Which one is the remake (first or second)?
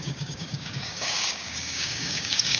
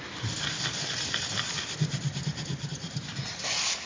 first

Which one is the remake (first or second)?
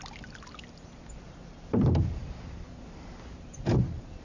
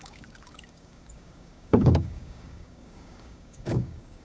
second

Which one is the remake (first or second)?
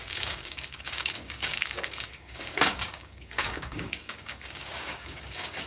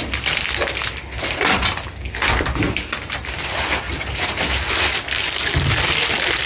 first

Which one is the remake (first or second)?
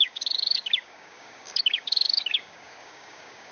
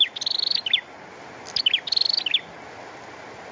first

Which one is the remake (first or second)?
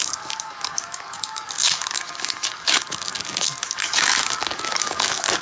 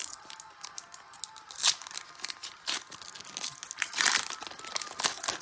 first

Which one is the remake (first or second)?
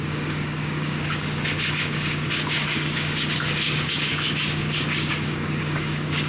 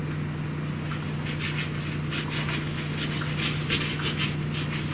first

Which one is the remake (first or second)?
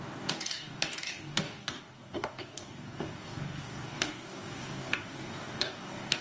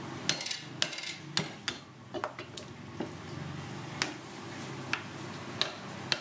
first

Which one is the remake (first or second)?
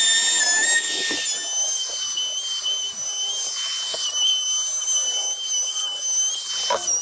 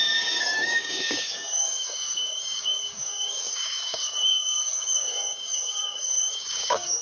second